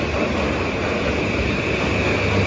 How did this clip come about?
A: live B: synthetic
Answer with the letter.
A